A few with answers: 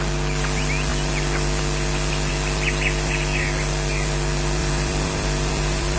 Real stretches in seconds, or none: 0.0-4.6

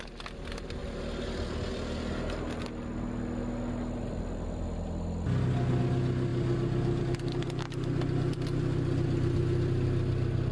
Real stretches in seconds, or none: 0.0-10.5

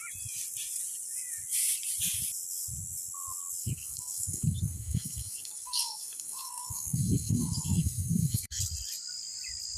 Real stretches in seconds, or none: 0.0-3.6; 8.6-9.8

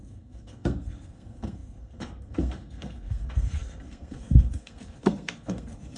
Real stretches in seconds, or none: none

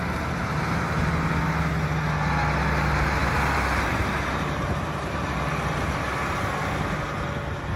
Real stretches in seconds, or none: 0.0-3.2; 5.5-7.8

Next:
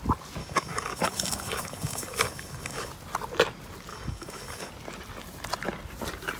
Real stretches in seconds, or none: 0.0-0.4; 2.9-3.9; 4.7-6.4

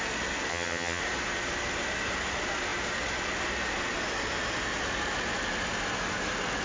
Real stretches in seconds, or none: 0.0-0.5; 1.0-6.6